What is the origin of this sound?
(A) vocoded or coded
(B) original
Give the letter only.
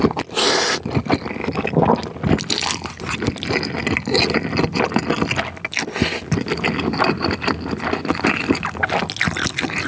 B